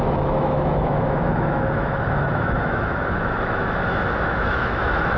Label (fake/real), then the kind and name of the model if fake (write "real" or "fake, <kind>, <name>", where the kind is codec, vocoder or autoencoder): fake, autoencoder, DAC-VAE